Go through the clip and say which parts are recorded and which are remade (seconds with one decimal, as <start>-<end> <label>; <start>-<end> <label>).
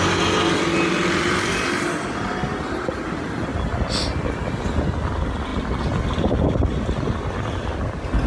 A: 0.0-8.3 recorded